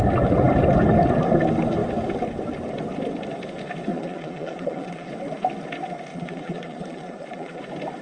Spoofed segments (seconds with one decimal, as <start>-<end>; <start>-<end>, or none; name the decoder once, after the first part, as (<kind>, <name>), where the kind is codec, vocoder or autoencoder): 3.9-5.1 (vocoder, Vocos); 6.1-7.6

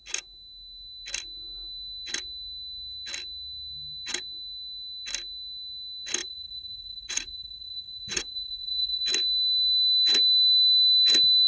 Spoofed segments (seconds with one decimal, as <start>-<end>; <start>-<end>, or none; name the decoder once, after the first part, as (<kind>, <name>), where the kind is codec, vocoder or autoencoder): 6.2-9.0 (vocoder, Vocos)